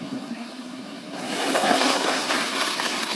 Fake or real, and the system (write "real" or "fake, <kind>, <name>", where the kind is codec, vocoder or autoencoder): fake, codec, SNAC